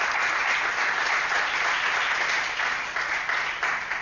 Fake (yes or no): no